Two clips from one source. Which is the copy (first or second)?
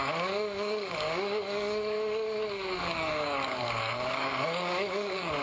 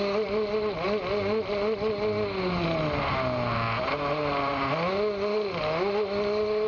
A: first